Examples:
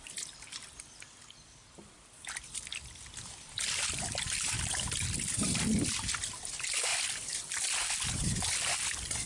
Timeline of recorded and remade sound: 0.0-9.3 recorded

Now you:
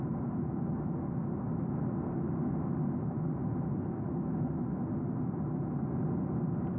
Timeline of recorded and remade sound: 0.0-6.8 recorded

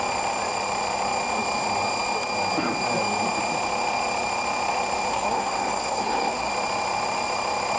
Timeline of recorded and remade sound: 0.0-5.1 recorded; 5.1-6.5 remade; 6.5-7.8 recorded

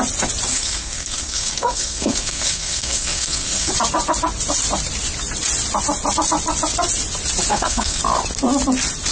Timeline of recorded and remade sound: 0.0-0.5 recorded; 0.5-3.7 remade; 3.7-7.5 recorded; 7.5-8.0 remade; 8.0-9.1 recorded

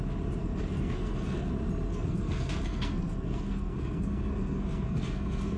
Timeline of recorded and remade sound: 0.0-0.4 recorded; 0.4-1.5 remade; 1.5-1.9 recorded; 1.9-5.6 remade